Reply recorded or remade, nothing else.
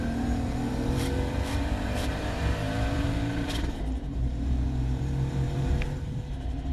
remade